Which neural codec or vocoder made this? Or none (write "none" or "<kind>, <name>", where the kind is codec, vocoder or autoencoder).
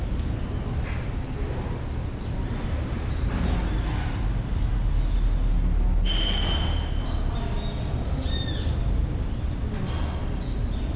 none